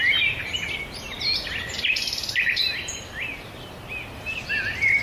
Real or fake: real